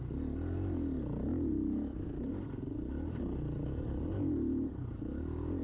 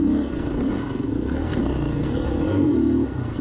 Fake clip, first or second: second